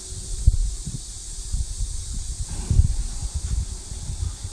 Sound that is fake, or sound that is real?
real